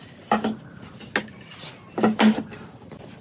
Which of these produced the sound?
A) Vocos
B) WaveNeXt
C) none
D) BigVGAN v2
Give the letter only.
C